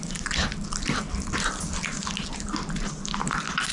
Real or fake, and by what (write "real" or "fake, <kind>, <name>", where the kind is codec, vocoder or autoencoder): real